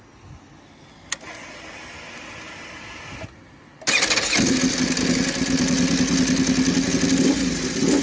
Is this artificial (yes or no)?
no